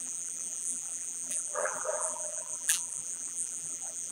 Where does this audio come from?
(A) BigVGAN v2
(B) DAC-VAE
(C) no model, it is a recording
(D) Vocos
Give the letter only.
A